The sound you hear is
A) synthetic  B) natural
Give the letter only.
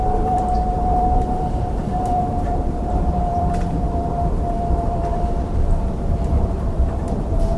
A